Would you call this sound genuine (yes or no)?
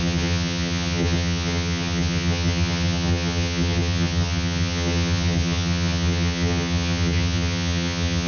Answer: no